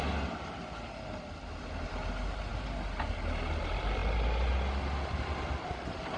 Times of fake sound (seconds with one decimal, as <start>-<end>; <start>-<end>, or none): none